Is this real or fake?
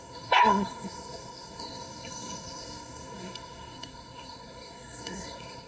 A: fake